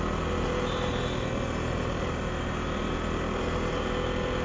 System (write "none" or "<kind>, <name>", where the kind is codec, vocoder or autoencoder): none